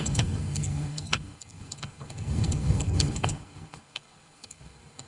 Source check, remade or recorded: remade